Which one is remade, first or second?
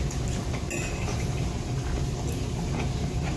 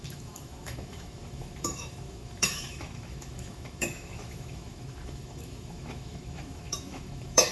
second